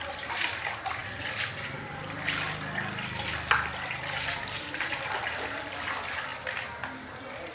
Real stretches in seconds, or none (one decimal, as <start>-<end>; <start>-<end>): 0.0-7.5